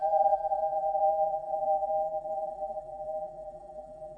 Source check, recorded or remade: remade